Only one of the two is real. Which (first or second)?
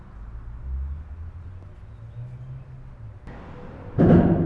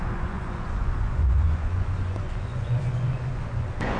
first